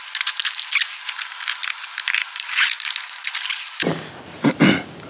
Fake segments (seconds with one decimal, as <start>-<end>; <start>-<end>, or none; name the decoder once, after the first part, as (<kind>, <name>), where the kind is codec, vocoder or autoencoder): 1.6-5.1 (vocoder, BigVGAN v2)